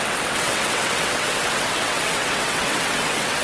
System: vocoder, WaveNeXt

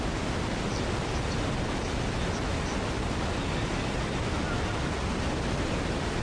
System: none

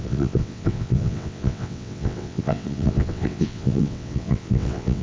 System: vocoder, WaveNeXt